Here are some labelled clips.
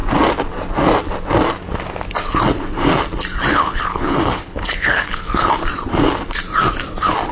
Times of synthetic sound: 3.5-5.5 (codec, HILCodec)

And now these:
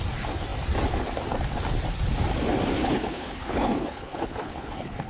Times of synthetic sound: 2.8-5.1 (codec, HILCodec)

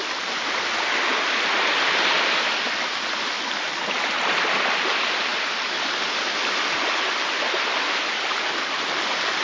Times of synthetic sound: none

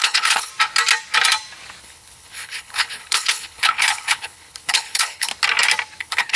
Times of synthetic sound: 0.0-0.5 (codec, HILCodec); 1.8-5.3; 6.0-6.4

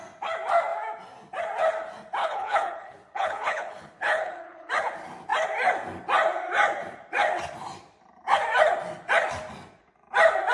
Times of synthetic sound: 2.2-4.7 (codec, HILCodec)